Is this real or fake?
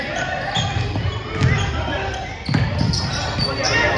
real